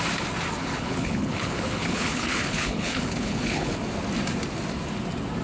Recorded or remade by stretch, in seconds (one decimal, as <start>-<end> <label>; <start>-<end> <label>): 0.0-0.6 recorded; 0.6-3.8 remade; 3.8-5.4 recorded